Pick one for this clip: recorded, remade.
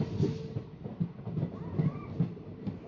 recorded